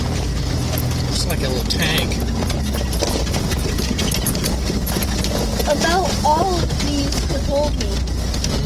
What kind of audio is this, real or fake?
real